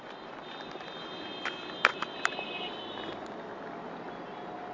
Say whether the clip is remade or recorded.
recorded